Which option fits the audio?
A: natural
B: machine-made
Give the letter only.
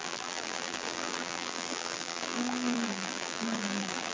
B